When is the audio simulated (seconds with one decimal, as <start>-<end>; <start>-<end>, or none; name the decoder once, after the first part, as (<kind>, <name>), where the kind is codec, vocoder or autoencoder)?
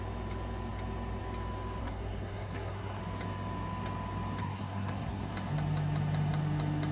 1.8-3.0 (codec, SNAC); 4.4-5.3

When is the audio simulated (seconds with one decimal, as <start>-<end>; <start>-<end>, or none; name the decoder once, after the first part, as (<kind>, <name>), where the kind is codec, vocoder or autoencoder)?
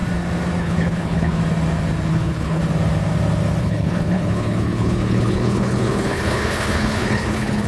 0.6-1.4 (codec, HILCodec); 2.1-2.6; 3.6-7.7